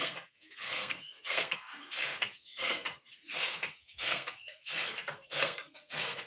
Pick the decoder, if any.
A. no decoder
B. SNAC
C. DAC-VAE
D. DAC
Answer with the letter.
B